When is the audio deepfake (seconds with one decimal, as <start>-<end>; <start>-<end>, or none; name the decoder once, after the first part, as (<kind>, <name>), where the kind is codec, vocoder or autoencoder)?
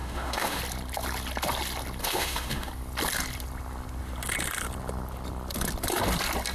0.0-0.6 (autoencoder, DAC-VAE); 2.0-2.7